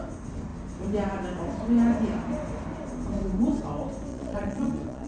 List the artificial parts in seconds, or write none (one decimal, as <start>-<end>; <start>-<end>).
4.1-5.1